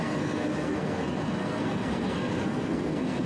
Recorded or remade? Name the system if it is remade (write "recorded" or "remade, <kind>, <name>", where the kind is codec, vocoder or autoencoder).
remade, codec, SNAC